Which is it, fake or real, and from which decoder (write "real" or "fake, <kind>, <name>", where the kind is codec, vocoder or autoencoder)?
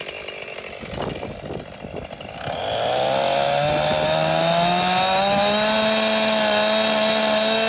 real